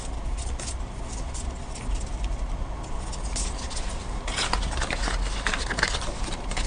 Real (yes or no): yes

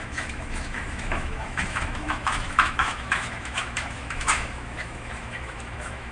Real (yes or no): no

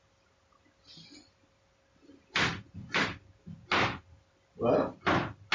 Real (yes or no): yes